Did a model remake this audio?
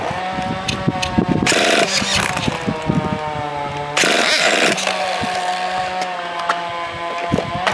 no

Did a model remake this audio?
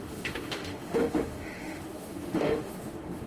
yes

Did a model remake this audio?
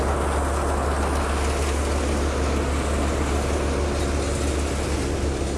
no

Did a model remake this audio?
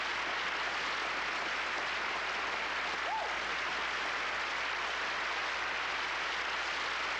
no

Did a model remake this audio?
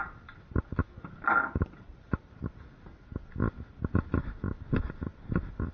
no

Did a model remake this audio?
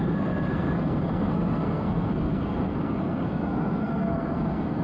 yes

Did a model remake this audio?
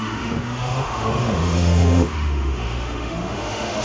yes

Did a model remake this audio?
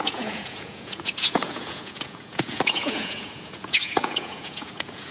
yes